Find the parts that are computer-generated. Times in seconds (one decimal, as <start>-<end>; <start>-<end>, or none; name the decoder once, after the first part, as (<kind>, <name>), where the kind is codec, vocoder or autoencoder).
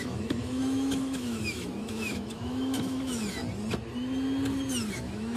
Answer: 0.0-3.4 (autoencoder, DAC-VAE); 4.9-5.4